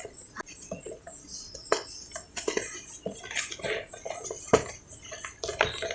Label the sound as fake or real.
real